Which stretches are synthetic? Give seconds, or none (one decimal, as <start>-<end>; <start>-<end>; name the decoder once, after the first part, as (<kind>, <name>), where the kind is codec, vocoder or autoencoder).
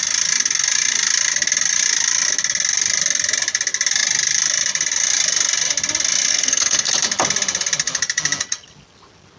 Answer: 6.3-6.9 (codec, SNAC)